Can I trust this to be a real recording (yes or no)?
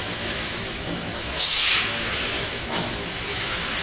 no